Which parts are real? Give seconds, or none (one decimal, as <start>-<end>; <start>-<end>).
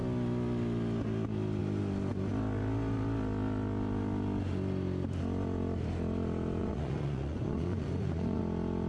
0.0-6.6; 8.4-8.9